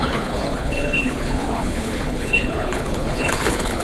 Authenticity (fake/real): fake